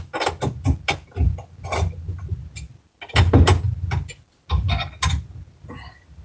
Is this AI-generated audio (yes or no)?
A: no